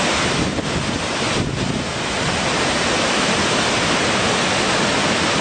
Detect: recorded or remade recorded